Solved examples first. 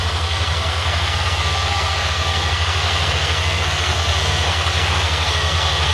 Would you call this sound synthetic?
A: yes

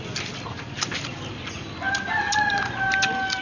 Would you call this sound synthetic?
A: no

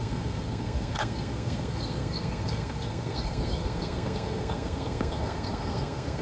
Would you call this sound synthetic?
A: yes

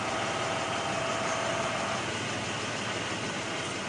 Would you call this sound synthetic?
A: no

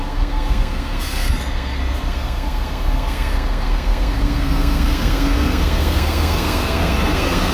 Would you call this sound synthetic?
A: yes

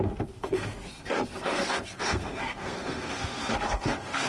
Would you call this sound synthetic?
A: yes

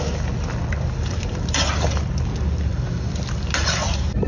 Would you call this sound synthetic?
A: no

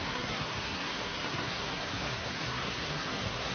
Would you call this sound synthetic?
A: yes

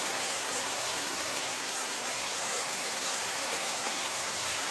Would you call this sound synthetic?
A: yes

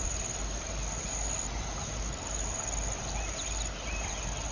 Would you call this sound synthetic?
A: no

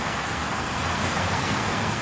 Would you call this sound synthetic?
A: yes